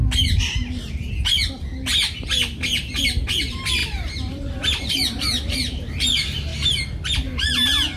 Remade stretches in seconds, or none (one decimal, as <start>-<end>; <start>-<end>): 3.4-6.5

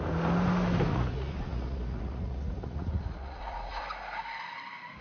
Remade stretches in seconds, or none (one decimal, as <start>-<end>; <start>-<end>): 0.9-3.8